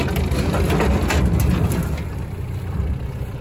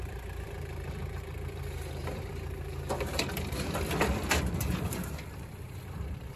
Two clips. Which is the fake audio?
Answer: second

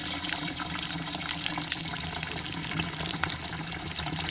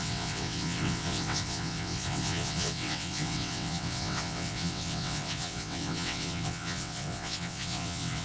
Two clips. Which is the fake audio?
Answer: second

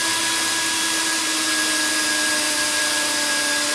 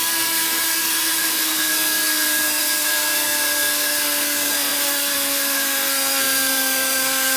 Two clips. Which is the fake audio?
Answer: second